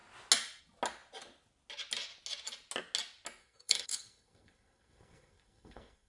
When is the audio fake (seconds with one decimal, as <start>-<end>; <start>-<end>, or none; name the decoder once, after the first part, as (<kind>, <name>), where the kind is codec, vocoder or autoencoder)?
3.4-6.1 (codec, SNAC)